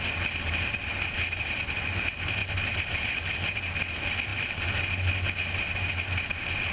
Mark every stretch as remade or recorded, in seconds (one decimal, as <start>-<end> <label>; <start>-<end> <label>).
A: 0.0-6.7 recorded